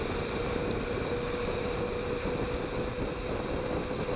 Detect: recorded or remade recorded